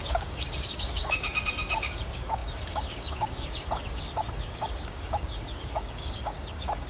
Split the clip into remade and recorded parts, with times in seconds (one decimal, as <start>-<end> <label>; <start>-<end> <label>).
0.0-6.9 remade